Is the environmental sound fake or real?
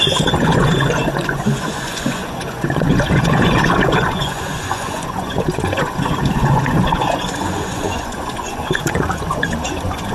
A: fake